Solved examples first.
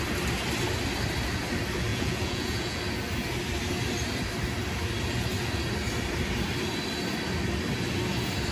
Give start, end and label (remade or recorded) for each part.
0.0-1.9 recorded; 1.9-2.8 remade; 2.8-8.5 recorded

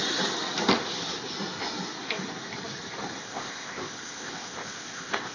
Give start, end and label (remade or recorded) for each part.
0.0-3.2 recorded; 3.2-5.3 remade

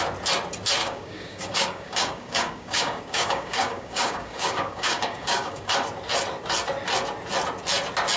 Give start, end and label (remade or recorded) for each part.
0.0-0.8 recorded; 0.8-5.7 remade; 5.7-8.2 recorded

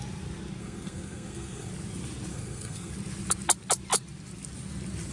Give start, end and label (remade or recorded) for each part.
0.0-0.6 recorded; 0.6-1.7 remade; 1.7-2.3 recorded; 2.3-2.9 remade; 2.9-5.1 recorded

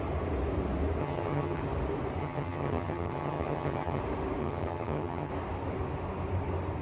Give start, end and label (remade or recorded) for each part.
0.0-1.0 recorded; 1.0-1.6 remade; 1.6-2.2 recorded; 2.2-4.0 remade; 4.0-4.4 recorded; 4.4-5.3 remade; 5.3-6.8 recorded

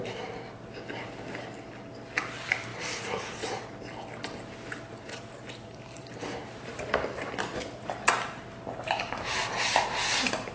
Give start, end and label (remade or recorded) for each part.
0.0-2.7 recorded; 2.7-3.5 remade; 3.5-4.9 recorded; 4.9-7.3 remade; 7.3-10.5 recorded

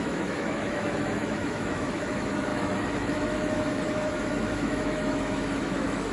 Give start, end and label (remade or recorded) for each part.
0.0-6.1 remade

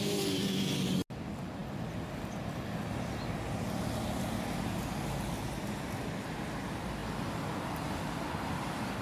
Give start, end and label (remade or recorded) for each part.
0.0-9.0 recorded